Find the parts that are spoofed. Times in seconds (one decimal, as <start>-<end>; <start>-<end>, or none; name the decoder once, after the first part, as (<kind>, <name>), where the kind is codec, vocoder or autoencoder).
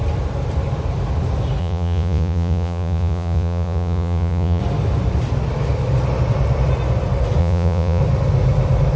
1.6-4.6 (vocoder, Vocos); 7.4-8.0